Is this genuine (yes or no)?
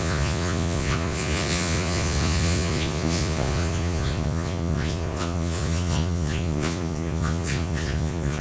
no